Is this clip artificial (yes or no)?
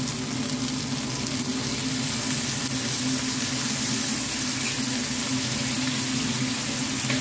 no